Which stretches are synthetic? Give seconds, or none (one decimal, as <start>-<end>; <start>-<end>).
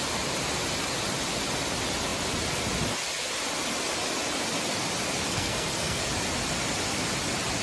5.3-6.0